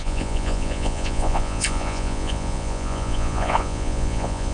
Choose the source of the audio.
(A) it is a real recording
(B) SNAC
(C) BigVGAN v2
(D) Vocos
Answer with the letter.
D